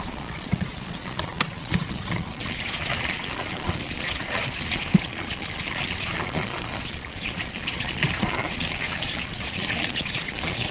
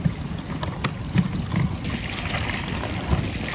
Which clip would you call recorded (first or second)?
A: second